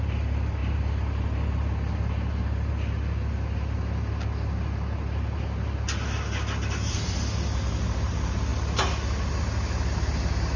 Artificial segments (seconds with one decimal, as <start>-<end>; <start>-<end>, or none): none